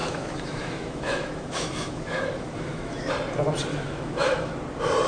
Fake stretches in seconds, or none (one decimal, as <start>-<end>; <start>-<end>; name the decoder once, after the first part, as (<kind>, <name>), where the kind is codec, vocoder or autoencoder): 0.0-3.1 (autoencoder, DAC-VAE); 3.7-4.5